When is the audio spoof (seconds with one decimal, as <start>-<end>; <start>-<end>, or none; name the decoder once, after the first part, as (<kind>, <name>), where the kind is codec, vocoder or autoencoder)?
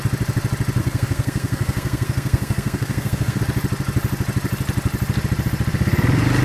0.8-3.4 (codec, SNAC)